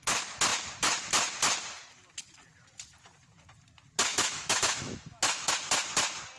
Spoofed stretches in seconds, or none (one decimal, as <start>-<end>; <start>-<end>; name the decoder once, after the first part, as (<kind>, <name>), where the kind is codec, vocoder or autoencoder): 4.1-5.5 (autoencoder, DAC-VAE)